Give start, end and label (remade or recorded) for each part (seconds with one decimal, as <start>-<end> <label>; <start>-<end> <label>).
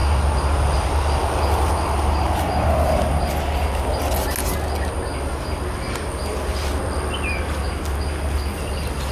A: 0.0-9.1 recorded